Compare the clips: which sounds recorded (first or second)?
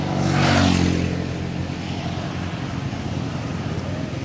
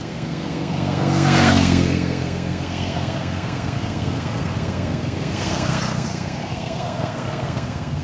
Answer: first